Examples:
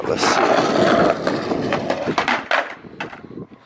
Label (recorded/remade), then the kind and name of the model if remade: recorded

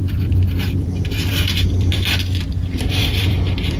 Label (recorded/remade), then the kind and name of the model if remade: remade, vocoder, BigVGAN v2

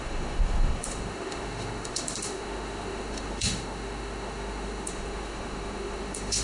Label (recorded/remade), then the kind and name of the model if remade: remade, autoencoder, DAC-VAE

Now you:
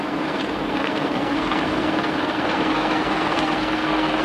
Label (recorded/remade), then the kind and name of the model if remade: remade, codec, SNAC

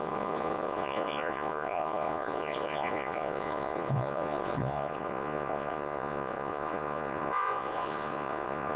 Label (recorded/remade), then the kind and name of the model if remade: remade, vocoder, Vocos